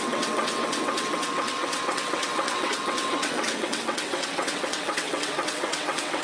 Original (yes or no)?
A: no